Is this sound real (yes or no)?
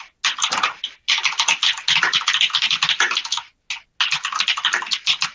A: yes